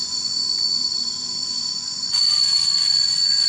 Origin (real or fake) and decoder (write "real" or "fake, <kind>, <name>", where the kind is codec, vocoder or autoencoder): fake, vocoder, Vocos